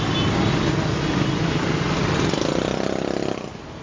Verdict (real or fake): real